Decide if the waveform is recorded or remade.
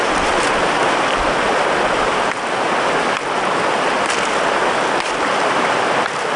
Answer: recorded